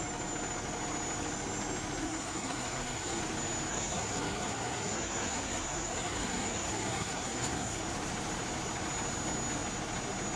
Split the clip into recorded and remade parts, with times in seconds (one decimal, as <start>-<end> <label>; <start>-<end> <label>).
0.0-2.0 recorded; 2.0-3.2 remade; 3.2-3.7 recorded; 3.7-7.8 remade; 7.8-10.4 recorded